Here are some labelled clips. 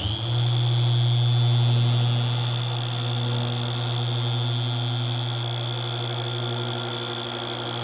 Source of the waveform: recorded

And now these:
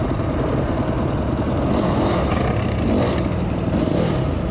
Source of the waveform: recorded